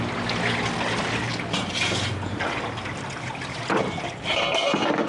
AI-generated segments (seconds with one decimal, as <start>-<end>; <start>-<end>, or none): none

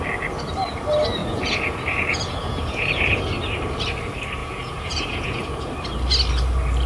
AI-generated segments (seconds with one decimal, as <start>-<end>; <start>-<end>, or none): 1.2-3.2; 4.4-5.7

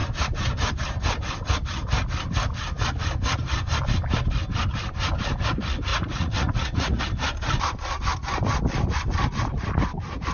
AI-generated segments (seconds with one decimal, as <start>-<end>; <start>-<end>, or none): 5.9-7.0

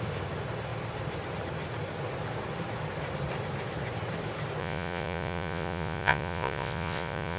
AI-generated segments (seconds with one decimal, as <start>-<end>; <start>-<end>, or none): 4.6-7.4

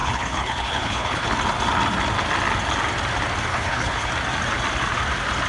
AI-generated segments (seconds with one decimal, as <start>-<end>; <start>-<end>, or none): 0.0-1.3; 3.5-4.1